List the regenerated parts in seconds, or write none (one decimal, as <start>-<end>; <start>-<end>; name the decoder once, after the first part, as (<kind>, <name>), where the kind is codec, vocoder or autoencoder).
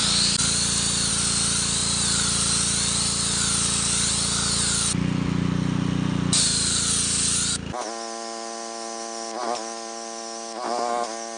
none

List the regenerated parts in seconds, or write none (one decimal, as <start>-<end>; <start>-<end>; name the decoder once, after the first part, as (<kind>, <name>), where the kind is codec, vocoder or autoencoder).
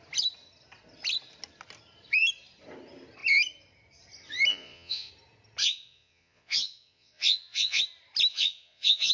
4.5-5.1 (vocoder, Vocos); 5.6-7.8; 8.3-9.1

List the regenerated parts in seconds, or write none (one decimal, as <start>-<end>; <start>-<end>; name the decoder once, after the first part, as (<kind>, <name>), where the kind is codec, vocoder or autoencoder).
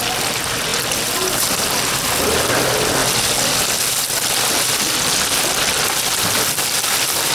none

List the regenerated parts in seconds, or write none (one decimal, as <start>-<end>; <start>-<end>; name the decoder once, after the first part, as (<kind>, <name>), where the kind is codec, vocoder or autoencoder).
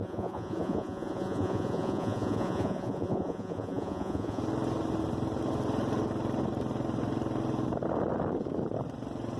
0.0-4.4 (vocoder, Vocos)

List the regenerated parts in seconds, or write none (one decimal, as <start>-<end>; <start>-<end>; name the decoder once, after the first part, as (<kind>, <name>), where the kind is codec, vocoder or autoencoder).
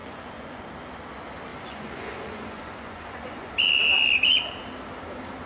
0.0-0.6 (vocoder, Vocos); 1.5-3.5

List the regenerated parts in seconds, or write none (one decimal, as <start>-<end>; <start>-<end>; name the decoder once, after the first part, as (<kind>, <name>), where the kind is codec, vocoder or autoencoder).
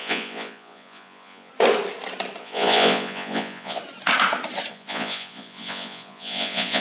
0.0-1.5 (vocoder, Vocos); 2.4-3.8; 4.7-6.8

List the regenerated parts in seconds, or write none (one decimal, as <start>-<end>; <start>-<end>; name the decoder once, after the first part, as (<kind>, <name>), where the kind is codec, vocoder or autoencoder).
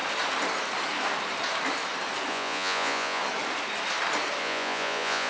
2.3-3.2 (vocoder, Vocos); 4.4-5.3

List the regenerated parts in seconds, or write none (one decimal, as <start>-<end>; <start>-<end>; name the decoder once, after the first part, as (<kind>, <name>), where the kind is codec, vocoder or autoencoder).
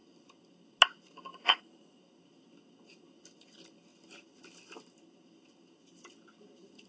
1.3-2.0 (vocoder, Vocos)